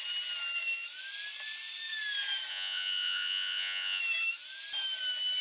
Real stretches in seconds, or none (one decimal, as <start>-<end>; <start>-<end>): 0.0-2.5; 4.0-5.4